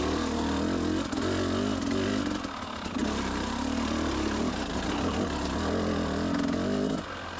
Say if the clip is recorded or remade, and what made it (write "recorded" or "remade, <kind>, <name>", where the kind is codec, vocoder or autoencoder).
recorded